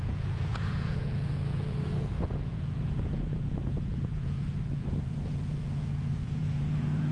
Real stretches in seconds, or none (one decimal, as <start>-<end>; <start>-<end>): none